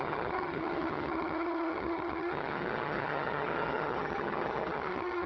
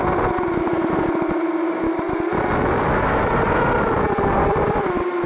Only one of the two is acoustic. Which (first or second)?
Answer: second